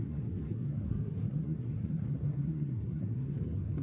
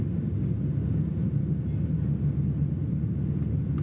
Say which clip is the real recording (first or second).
second